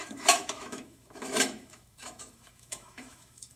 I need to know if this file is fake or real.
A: fake